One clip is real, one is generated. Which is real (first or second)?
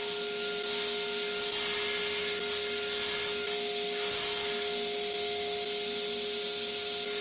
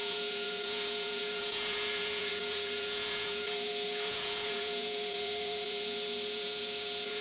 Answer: first